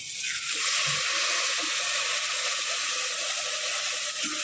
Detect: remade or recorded recorded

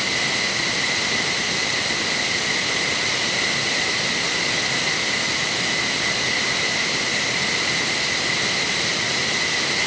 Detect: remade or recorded recorded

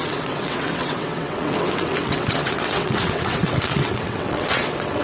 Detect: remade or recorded remade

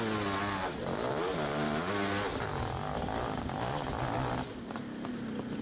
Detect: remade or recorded recorded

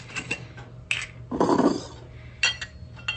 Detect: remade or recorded recorded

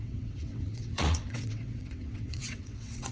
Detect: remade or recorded remade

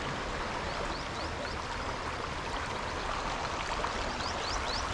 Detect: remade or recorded recorded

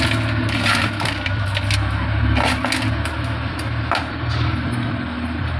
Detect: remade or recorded recorded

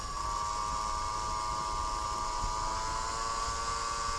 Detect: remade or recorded recorded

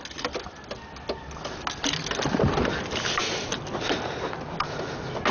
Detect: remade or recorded recorded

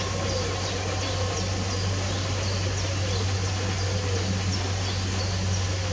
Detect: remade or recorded recorded